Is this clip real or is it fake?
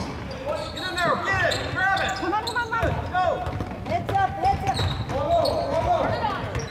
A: real